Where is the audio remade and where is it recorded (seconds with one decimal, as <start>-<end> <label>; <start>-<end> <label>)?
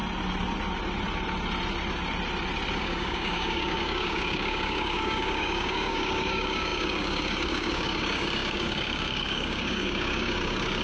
0.0-2.8 recorded; 2.8-10.8 remade